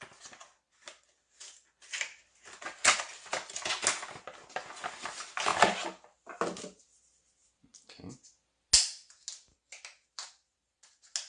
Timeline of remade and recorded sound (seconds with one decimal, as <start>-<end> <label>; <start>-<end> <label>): 0.0-11.3 recorded